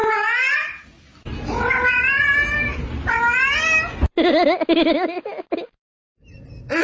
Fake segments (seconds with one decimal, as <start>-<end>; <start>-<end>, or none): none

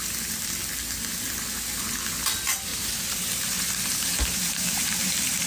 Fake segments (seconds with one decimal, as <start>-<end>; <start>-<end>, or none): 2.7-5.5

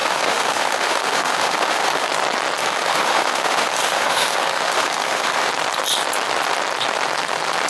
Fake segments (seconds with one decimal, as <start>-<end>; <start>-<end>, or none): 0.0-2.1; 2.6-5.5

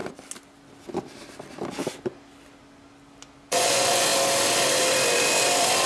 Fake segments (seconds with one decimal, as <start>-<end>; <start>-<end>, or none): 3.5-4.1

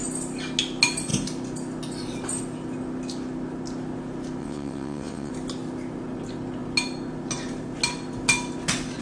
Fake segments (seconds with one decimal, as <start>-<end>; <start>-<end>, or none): 4.4-5.3

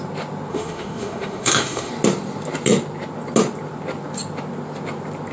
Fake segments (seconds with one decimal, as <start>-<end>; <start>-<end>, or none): 0.5-1.9

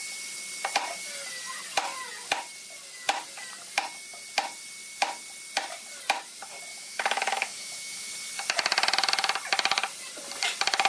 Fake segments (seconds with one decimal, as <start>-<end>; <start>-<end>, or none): 6.7-8.1

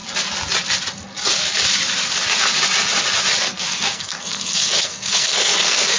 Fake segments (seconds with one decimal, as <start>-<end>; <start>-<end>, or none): 3.4-6.0